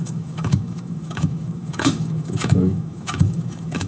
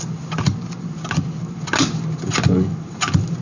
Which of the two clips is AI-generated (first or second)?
first